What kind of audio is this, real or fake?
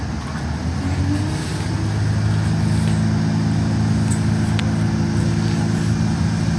real